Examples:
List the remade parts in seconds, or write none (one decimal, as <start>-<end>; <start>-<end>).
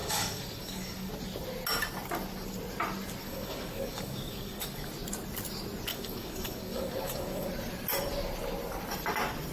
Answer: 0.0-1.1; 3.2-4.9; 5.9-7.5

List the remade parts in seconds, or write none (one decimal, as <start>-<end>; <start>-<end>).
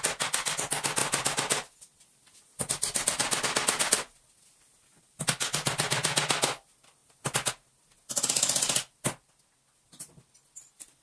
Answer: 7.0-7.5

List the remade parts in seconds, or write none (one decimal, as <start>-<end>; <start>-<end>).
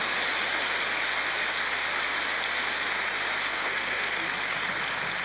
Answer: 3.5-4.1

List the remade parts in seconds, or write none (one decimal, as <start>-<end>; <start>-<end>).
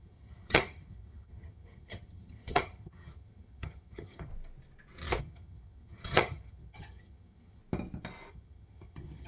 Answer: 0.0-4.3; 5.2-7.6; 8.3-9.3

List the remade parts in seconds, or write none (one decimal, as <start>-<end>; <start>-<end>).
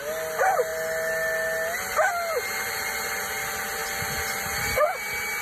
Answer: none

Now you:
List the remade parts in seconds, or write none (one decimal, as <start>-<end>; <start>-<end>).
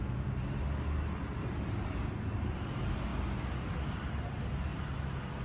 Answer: none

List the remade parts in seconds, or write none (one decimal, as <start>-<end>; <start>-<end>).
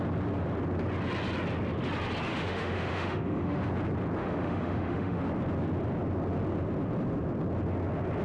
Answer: 2.3-3.7; 4.2-5.2